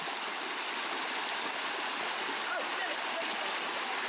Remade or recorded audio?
recorded